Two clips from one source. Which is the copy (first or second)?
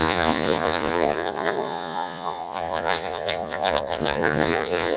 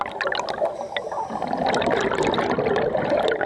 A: first